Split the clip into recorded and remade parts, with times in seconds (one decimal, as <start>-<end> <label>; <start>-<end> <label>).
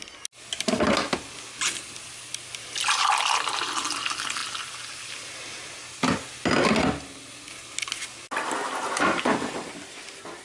0.0-10.4 recorded